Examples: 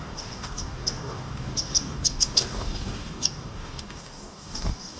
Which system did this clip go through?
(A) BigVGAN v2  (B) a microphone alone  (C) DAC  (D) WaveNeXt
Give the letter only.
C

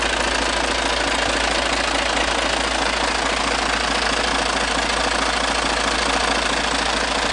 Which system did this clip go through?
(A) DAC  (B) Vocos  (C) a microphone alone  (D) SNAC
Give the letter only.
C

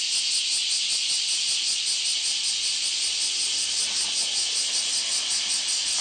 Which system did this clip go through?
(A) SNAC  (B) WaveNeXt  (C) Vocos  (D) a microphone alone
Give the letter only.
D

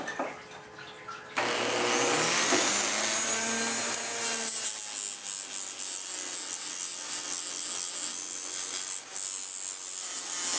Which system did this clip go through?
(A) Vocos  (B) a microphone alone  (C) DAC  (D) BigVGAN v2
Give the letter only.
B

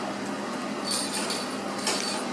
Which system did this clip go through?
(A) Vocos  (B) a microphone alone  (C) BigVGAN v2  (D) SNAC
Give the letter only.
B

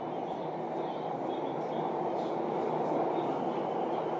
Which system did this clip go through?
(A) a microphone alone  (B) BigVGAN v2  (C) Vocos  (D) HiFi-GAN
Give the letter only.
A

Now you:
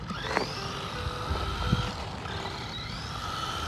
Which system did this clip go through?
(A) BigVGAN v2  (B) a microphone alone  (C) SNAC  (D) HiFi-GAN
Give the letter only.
B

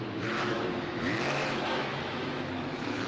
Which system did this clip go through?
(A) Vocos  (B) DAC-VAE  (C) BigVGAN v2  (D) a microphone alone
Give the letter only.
B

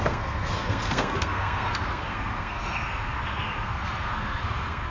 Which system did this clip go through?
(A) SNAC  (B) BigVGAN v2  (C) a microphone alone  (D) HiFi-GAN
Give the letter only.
A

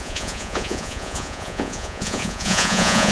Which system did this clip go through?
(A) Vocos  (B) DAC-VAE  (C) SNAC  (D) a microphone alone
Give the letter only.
A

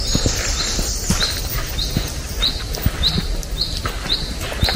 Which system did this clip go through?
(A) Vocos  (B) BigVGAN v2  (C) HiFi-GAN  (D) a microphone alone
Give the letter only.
D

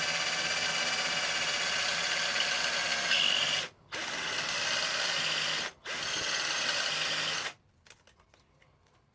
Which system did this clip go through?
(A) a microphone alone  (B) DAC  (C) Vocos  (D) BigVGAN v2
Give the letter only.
A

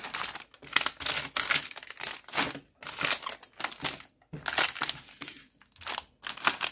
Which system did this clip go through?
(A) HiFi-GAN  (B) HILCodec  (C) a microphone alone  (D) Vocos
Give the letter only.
C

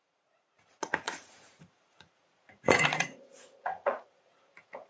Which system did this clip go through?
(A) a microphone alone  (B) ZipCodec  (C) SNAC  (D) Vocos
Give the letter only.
D